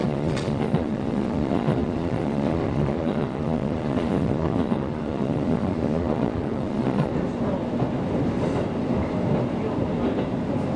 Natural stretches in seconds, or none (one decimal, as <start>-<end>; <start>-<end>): 7.1-10.8

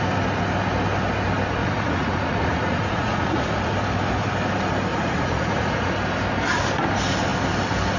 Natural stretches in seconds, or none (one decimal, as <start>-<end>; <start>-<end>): 0.0-1.6; 3.7-4.9; 5.9-8.0

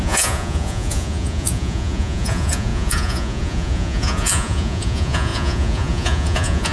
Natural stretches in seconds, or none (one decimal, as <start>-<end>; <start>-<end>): none